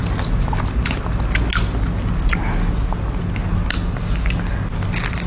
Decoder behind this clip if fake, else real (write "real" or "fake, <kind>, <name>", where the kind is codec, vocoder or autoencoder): real